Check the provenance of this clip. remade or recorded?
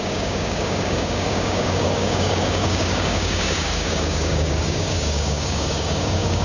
remade